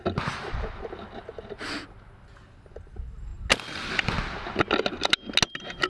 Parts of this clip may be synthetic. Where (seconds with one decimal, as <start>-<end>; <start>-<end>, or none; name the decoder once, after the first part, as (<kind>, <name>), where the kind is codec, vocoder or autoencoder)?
none

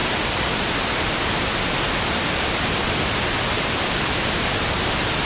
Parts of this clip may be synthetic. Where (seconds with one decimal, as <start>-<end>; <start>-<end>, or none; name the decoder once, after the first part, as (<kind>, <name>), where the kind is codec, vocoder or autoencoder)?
none

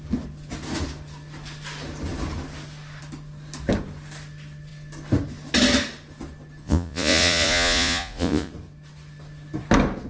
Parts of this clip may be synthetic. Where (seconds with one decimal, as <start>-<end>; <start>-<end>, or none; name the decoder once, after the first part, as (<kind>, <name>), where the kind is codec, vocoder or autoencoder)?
6.6-8.5 (vocoder, Vocos)

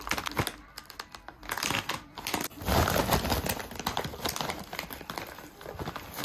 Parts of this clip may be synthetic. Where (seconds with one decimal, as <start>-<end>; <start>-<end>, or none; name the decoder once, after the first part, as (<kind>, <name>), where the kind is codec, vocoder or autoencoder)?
none

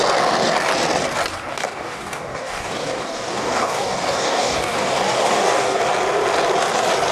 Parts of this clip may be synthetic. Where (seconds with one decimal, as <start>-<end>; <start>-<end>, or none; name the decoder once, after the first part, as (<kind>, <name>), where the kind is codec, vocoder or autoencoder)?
1.5-5.8 (codec, DAC)